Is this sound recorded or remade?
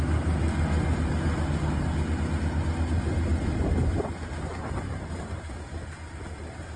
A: recorded